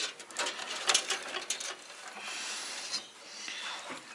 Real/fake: real